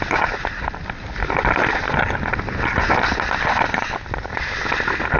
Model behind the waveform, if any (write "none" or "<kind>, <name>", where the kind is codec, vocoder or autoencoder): none